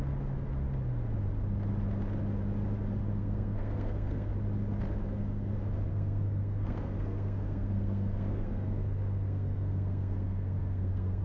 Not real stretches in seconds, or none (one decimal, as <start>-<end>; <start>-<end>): 3.1-4.3; 5.0-5.5; 5.9-11.2